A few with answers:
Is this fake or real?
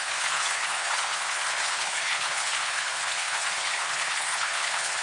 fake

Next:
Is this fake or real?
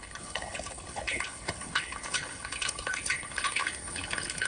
fake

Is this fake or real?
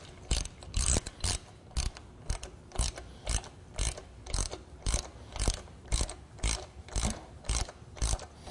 real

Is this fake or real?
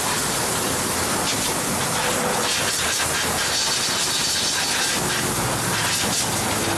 real